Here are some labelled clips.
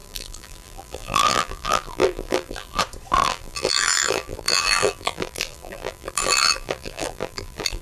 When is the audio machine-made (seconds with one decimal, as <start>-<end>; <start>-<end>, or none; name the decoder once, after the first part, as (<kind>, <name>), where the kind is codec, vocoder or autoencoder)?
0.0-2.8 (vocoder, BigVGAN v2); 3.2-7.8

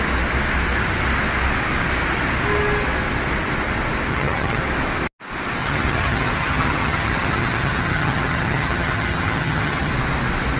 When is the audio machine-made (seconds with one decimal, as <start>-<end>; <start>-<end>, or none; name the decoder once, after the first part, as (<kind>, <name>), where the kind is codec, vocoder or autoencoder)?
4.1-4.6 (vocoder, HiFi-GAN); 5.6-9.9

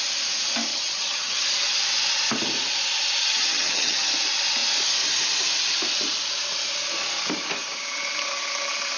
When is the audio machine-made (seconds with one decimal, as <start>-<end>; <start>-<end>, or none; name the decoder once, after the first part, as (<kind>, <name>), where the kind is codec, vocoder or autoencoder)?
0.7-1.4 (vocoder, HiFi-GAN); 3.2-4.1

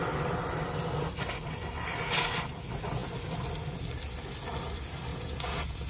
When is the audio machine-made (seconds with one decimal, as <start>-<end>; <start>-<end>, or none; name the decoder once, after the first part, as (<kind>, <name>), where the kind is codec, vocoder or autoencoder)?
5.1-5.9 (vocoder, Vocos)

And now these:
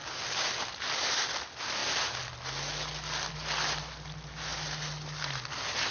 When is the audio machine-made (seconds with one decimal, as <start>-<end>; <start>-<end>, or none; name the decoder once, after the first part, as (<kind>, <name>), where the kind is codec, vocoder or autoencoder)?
none

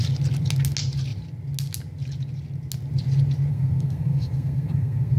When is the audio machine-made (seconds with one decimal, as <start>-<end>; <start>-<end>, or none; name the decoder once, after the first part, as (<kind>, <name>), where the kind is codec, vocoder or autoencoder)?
3.5-5.2 (codec, SNAC)

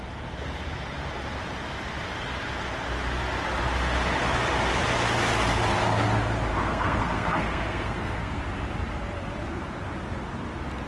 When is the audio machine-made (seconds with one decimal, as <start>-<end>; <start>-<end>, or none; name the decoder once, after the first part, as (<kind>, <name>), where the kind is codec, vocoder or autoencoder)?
6.5-8.4 (codec, SNAC)